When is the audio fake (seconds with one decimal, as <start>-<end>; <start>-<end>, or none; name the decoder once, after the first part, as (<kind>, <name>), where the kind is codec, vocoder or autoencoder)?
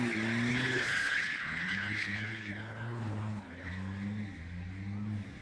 0.5-3.7 (codec, HILCodec)